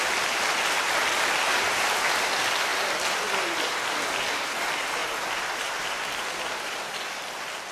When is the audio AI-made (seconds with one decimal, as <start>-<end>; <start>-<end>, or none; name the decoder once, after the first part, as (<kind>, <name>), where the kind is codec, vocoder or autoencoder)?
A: 0.0-2.7 (vocoder, BigVGAN v2); 3.8-5.0; 5.7-7.7